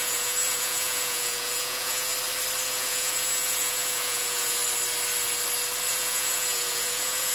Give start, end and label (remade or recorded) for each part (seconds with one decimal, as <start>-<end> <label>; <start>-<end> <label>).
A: 0.0-2.1 remade; 2.1-2.7 recorded; 2.7-4.6 remade; 4.6-5.9 recorded; 5.9-7.3 remade